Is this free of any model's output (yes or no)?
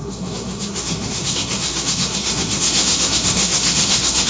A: no